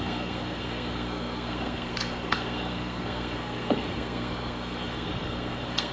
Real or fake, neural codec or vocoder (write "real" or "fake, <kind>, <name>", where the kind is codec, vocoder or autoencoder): fake, codec, SNAC